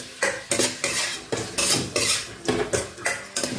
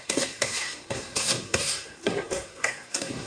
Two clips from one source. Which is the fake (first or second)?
second